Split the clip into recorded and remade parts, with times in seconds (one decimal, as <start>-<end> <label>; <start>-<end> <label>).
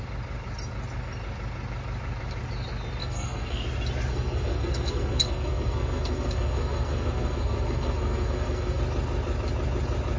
0.0-3.0 recorded; 3.0-3.6 remade; 3.6-4.1 recorded; 4.1-8.8 remade; 8.8-10.2 recorded